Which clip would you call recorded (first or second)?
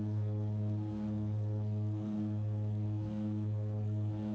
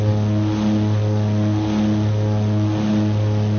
second